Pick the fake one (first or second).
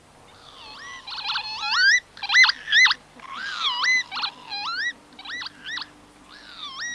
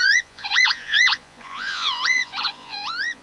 second